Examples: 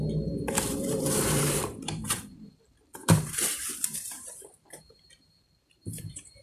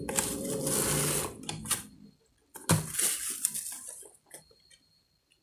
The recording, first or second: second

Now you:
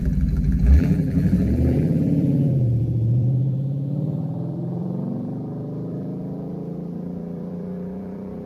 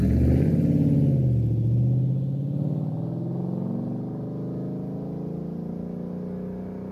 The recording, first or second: second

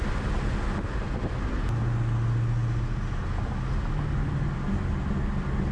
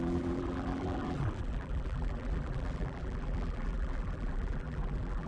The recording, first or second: first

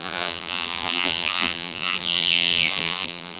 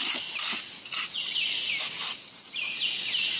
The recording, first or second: second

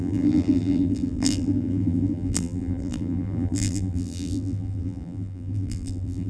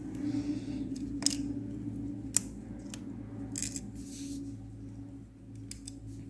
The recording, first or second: second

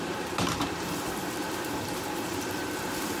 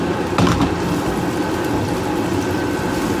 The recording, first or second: second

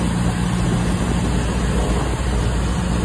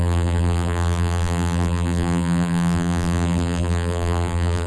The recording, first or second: first